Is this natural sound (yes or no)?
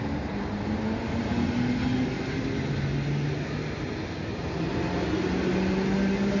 yes